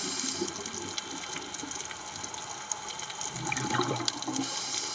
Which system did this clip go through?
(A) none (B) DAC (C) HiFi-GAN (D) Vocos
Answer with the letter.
A